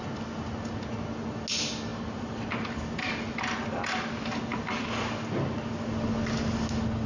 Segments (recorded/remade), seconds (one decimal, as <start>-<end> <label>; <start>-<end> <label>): 0.0-7.1 recorded